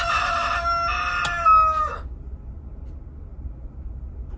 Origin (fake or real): real